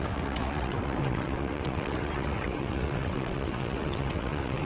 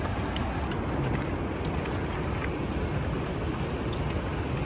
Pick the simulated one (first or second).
first